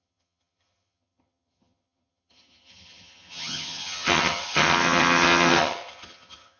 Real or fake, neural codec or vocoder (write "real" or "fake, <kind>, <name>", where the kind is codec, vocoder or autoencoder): fake, vocoder, HiFi-GAN